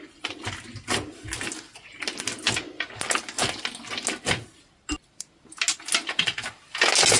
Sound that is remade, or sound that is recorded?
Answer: recorded